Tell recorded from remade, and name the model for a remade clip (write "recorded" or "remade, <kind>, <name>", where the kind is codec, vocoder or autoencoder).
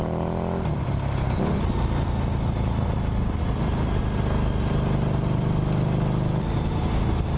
recorded